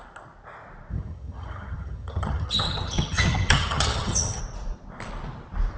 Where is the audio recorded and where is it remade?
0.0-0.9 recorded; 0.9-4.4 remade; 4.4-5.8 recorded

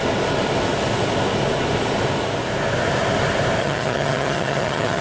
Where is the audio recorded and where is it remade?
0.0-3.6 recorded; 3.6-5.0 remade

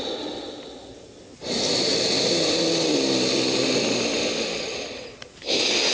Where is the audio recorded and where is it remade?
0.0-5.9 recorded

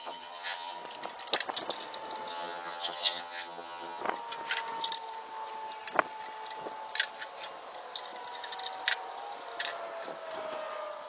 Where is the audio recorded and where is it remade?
0.0-0.8 remade; 0.8-2.3 recorded; 2.3-4.0 remade; 4.0-11.1 recorded